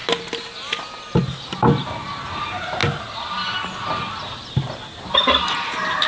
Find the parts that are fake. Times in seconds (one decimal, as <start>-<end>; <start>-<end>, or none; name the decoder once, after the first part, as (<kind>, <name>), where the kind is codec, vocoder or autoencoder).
none